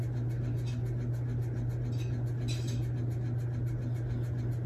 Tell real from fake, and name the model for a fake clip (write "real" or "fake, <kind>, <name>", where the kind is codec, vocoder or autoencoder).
real